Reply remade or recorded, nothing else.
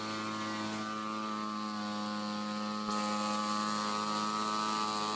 recorded